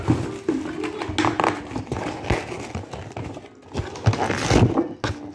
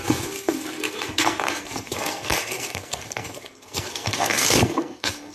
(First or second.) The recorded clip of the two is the first